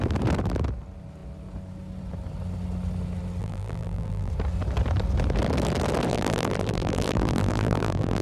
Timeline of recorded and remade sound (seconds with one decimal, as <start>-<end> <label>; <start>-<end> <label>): 0.0-3.4 recorded; 3.4-4.3 remade; 4.3-6.1 recorded; 6.1-8.2 remade